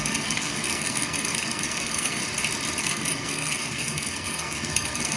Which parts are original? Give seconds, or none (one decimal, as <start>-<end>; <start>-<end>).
2.2-2.8